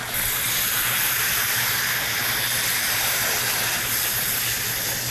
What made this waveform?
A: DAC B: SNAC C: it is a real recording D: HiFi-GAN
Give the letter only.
C